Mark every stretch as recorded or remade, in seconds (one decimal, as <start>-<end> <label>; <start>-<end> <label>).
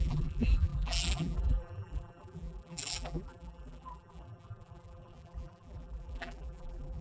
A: 0.0-7.0 remade